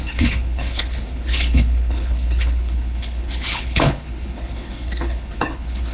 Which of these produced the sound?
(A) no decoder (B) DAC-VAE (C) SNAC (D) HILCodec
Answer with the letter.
D